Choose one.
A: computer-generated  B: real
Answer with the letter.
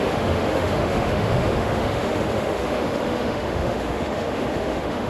A